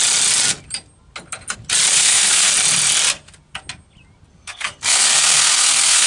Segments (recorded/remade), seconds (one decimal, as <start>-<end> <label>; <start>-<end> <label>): 0.0-1.9 recorded; 1.9-2.5 remade; 2.5-4.3 recorded; 4.3-6.1 remade